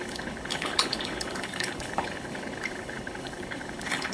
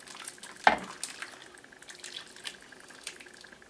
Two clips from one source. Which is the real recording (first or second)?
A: second